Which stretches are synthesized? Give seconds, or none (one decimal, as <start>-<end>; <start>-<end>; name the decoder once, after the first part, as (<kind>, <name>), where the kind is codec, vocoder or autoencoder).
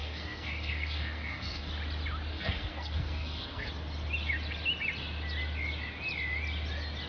0.0-1.7 (codec, SNAC); 2.3-3.7